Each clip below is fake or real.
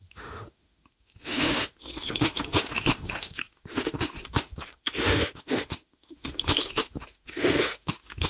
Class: fake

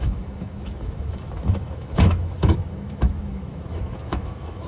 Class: fake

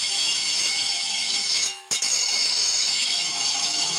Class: fake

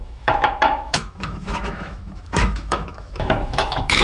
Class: fake